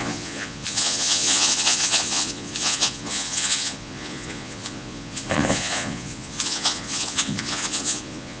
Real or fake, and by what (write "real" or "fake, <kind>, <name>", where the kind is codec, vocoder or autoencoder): fake, vocoder, Vocos